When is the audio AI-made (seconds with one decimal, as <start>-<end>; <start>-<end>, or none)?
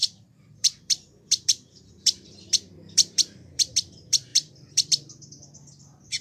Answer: 0.0-6.2